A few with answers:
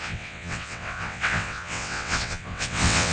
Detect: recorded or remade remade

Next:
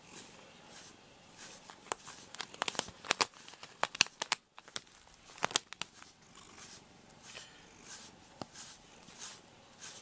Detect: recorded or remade recorded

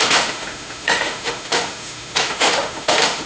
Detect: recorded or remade remade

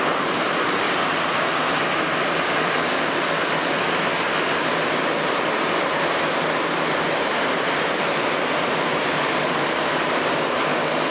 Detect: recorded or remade recorded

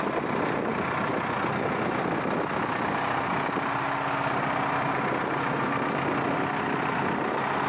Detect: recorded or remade recorded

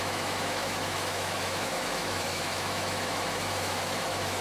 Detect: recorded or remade remade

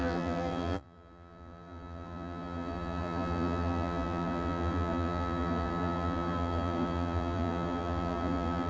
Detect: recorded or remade remade